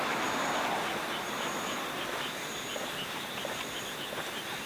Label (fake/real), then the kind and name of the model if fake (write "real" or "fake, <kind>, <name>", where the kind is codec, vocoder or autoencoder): real